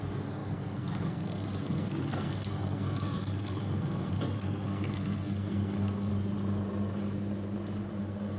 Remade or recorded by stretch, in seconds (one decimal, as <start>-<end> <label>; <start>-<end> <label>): 0.0-6.1 remade; 6.1-8.0 recorded; 8.0-8.4 remade